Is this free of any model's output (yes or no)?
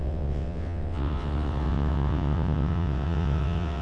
no